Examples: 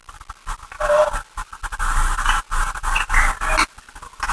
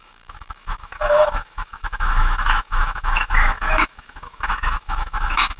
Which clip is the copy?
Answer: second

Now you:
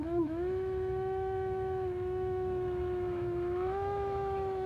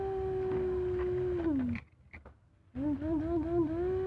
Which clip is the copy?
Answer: first